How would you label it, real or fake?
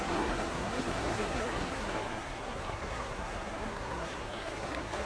fake